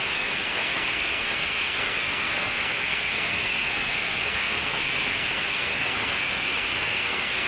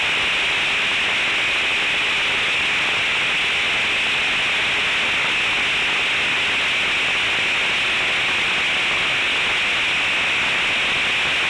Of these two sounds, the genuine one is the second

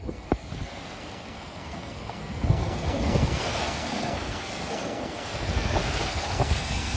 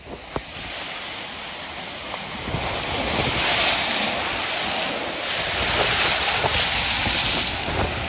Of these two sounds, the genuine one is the second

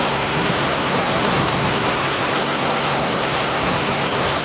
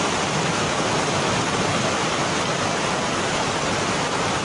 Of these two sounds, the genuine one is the second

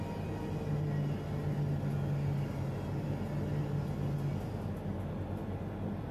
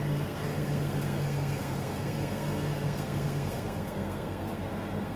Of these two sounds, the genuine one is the first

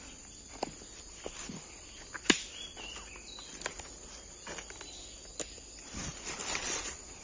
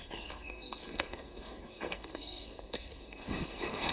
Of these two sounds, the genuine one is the first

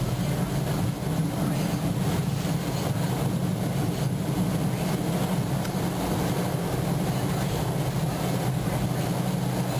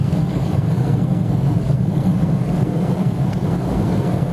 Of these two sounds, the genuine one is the first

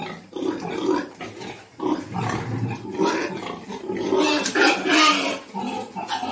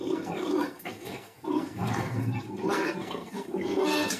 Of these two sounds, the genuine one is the first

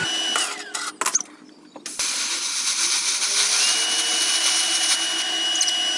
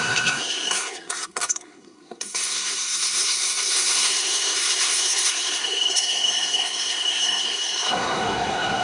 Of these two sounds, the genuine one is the first